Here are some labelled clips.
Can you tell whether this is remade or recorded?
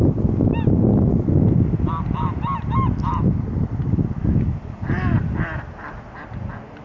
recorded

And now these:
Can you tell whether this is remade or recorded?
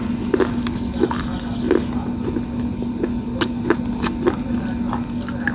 recorded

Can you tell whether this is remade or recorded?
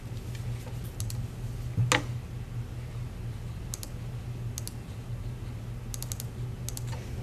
recorded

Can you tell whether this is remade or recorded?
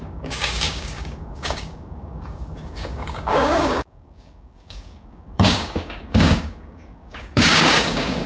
remade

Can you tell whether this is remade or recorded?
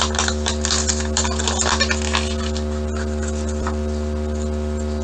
recorded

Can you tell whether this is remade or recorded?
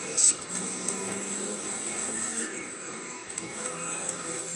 remade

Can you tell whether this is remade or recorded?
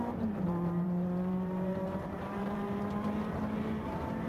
remade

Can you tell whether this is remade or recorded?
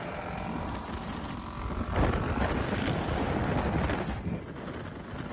recorded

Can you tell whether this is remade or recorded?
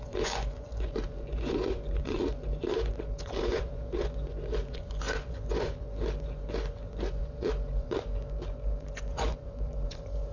remade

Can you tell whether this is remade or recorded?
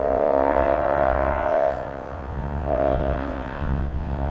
remade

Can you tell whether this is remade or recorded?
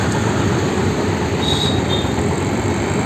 recorded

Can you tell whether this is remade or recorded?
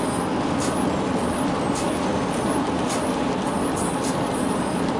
recorded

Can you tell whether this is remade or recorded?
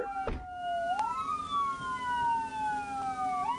recorded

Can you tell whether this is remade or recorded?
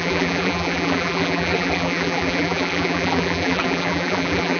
remade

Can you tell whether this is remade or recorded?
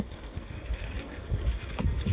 remade